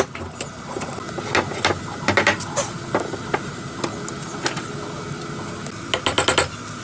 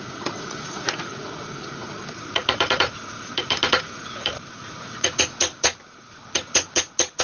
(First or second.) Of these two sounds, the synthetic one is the second